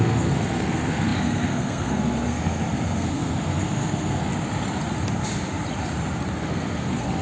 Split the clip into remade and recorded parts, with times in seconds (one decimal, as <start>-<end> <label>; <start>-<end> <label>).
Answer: 0.0-4.3 remade; 4.3-6.4 recorded; 6.4-7.2 remade